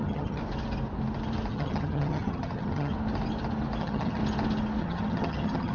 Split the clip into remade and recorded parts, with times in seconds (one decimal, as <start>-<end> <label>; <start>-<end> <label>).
0.0-0.4 remade; 0.4-1.5 recorded; 1.5-2.9 remade; 2.9-3.8 recorded; 3.8-4.2 remade; 4.2-4.8 recorded; 4.8-5.7 remade